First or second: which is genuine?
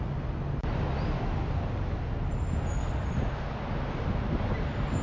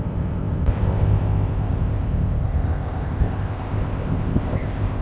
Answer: first